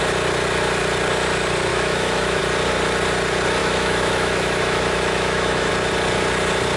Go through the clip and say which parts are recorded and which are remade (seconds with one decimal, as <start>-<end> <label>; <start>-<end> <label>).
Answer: 0.0-1.7 recorded; 1.7-2.4 remade; 2.4-3.6 recorded; 3.6-5.7 remade; 5.7-6.8 recorded